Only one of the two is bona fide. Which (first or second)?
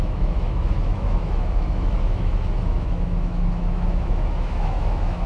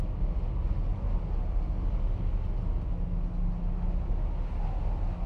second